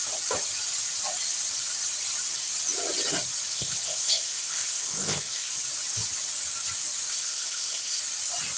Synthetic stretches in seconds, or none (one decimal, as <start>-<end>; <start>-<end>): 3.5-5.5; 7.1-8.0

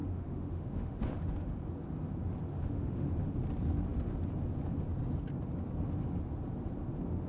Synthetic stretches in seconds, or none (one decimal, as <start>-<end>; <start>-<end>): 0.0-1.2; 2.5-3.1

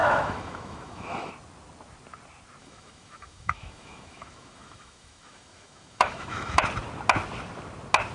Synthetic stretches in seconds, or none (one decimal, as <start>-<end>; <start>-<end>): 0.0-1.3; 2.6-6.6

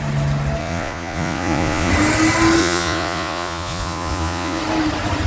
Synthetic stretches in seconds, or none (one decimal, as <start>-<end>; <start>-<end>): 0.6-1.9; 2.6-4.6

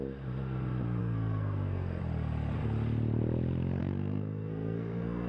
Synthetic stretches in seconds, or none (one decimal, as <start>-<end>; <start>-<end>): 1.0-2.0; 3.8-5.3